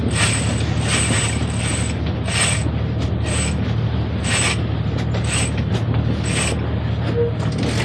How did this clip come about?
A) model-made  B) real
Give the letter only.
B